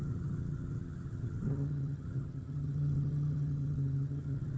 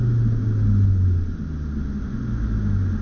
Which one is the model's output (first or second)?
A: first